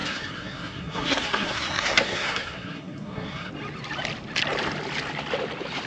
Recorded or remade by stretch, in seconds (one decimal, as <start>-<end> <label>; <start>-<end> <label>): 0.0-3.5 remade; 3.5-5.9 recorded